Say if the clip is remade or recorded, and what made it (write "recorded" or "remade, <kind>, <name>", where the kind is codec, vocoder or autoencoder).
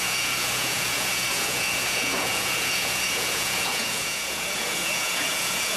remade, vocoder, Vocos